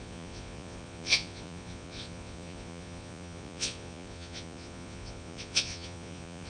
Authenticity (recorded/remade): remade